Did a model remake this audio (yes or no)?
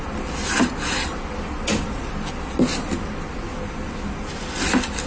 no